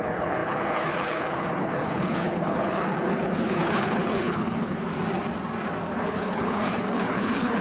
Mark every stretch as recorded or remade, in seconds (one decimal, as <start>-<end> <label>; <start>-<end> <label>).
0.0-4.9 remade; 4.9-6.0 recorded; 6.0-7.6 remade